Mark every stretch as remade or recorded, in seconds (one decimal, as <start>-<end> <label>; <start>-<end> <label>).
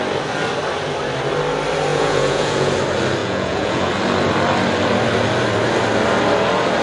0.0-1.9 recorded; 1.9-2.7 remade; 2.7-3.2 recorded; 3.2-3.9 remade; 3.9-6.8 recorded